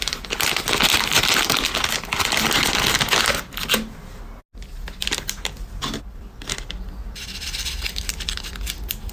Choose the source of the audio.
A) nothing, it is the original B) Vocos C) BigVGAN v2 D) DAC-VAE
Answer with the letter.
A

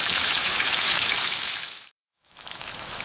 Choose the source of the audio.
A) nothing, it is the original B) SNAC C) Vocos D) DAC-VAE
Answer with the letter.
D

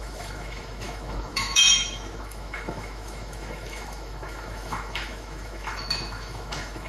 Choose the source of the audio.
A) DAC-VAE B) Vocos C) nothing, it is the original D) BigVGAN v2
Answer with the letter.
A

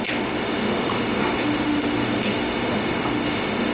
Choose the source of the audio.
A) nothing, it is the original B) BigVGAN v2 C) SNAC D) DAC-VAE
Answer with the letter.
D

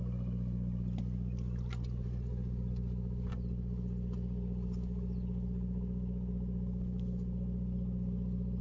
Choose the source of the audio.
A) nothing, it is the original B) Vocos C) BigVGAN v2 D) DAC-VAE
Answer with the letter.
A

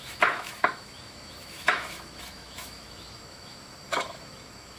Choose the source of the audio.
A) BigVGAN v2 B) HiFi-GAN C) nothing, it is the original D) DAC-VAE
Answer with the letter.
D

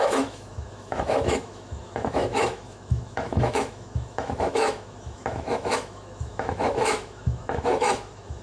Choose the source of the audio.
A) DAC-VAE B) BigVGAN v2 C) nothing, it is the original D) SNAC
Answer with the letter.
A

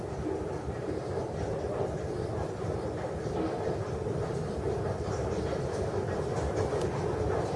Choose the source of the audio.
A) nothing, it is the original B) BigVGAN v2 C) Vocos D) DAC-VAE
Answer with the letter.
A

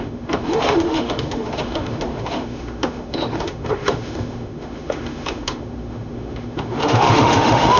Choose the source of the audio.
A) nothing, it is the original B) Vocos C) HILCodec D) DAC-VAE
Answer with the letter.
D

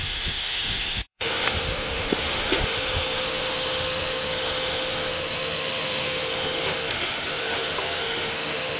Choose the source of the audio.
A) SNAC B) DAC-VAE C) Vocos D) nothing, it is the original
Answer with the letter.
B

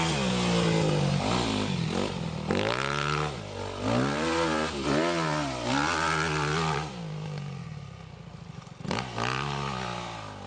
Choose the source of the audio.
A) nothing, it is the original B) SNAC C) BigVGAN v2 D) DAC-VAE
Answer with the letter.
A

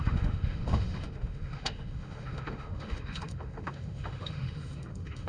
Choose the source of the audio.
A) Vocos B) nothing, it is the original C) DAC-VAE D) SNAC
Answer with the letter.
C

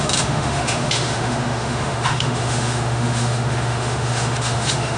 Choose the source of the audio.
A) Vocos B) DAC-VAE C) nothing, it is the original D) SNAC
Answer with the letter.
B